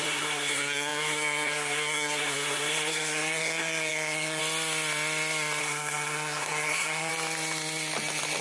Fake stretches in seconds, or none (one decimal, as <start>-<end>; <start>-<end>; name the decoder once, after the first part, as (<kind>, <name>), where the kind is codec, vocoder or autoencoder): 0.0-4.4 (codec, SNAC); 5.6-7.1